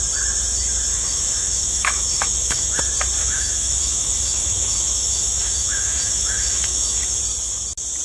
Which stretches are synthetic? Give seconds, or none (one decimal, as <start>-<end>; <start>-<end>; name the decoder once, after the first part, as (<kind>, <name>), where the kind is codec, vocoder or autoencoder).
0.9-2.8 (autoencoder, DAC-VAE); 3.2-7.2